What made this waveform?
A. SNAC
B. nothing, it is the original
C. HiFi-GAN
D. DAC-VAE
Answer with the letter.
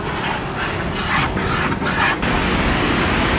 B